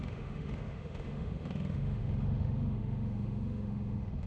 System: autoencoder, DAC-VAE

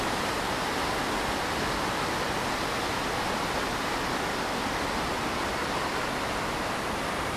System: none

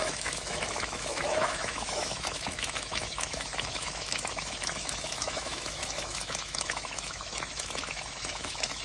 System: autoencoder, DAC-VAE